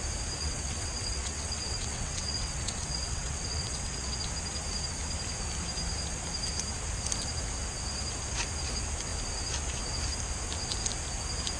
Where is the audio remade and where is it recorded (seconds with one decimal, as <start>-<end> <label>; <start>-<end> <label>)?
0.0-0.4 recorded; 0.4-4.2 remade; 4.2-11.6 recorded